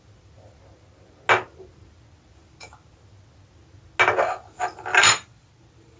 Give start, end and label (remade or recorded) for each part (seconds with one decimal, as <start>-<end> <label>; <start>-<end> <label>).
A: 0.0-4.9 recorded; 4.9-5.5 remade; 5.5-6.0 recorded